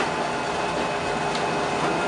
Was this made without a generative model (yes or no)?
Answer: yes